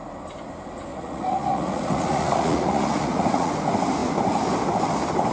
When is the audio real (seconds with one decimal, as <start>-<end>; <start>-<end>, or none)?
0.0-0.9; 3.5-5.3